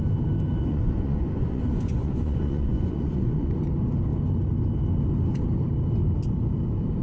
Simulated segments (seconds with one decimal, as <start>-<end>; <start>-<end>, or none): 0.7-3.5

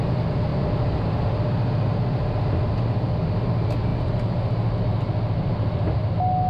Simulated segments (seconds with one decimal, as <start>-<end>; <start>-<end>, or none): none